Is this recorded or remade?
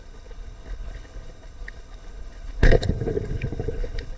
remade